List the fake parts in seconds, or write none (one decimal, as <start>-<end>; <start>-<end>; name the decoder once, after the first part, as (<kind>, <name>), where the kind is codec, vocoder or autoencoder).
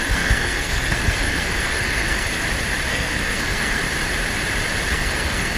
0.0-2.3 (codec, SNAC); 2.9-3.8; 4.9-5.6